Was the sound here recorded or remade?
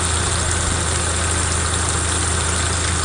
recorded